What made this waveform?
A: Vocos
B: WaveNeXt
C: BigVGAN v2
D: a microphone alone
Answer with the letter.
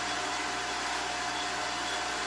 D